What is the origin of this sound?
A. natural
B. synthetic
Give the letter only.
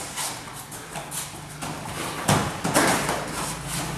A